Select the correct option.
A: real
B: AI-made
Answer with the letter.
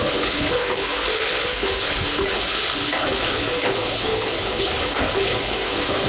B